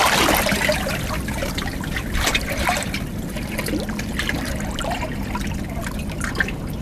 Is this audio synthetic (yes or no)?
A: no